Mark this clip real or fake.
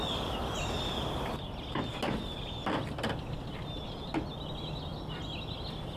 real